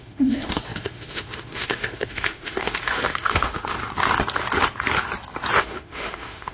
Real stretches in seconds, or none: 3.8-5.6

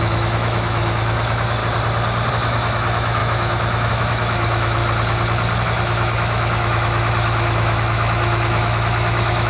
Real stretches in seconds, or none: 1.6-2.3; 4.8-5.6

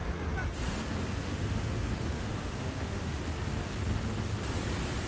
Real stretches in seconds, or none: 0.0-1.2; 3.2-5.1

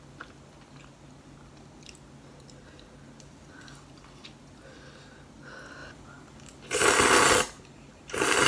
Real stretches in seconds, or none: 0.0-8.5

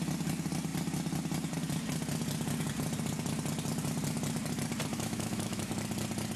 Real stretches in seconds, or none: 0.0-4.9; 5.7-6.4